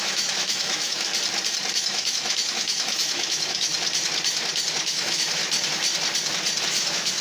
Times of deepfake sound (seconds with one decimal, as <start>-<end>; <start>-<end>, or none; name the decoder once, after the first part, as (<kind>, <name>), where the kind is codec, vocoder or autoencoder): 0.0-1.1 (autoencoder, DAC-VAE); 1.7-3.7; 4.8-5.4; 6.6-7.2